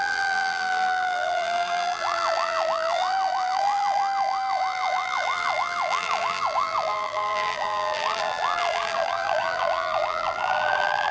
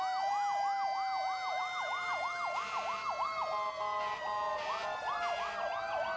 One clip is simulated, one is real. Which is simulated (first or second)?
first